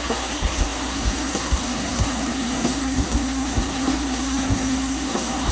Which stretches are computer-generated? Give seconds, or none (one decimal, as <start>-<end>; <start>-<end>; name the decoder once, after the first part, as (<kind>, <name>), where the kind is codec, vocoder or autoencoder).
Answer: 0.0-5.5 (codec, SNAC)